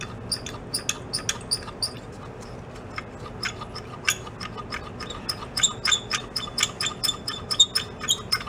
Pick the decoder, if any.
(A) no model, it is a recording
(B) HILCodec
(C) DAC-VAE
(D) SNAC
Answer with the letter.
A